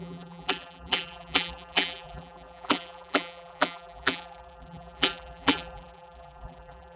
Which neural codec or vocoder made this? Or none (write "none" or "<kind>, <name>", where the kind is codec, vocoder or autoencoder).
vocoder, BigVGAN v2